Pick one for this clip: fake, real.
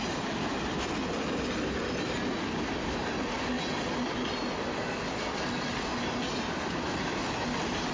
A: real